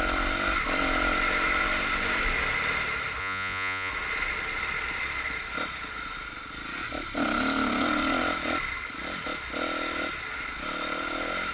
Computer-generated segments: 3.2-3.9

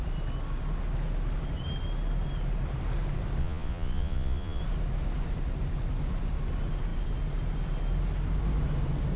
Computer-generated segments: 3.4-4.6